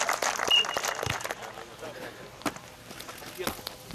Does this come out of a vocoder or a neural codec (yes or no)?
no